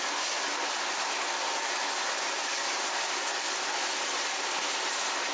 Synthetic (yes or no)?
no